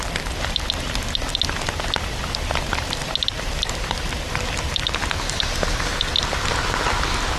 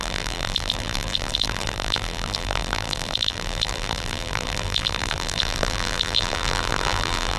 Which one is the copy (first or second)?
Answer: second